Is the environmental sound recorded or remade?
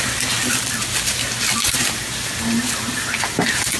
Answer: recorded